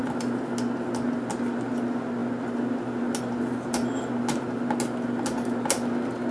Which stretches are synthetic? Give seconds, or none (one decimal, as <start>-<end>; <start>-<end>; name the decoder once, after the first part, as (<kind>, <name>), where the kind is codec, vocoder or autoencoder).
none